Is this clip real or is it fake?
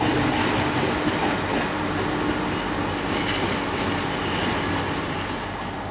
real